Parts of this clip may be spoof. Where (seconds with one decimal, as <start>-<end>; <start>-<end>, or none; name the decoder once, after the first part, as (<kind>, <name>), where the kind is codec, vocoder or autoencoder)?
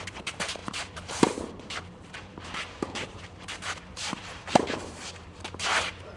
0.0-6.2 (vocoder, BigVGAN v2)